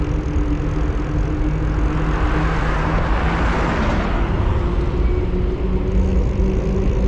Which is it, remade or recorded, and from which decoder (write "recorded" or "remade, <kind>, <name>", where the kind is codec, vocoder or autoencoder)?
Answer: recorded